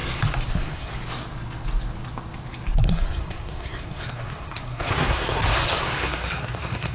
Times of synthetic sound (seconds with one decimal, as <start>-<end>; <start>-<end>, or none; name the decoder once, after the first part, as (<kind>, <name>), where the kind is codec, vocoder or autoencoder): 0.5-0.9 (codec, SNAC); 2.8-6.9